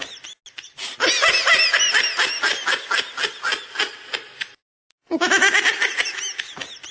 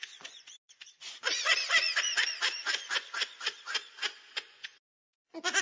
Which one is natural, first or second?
first